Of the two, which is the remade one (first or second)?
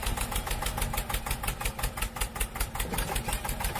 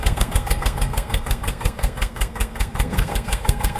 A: second